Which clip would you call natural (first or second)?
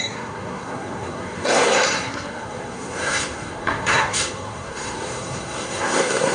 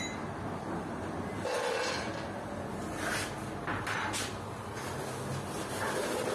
second